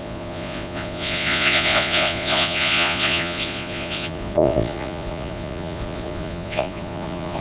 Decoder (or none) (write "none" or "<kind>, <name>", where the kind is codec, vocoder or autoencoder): vocoder, Vocos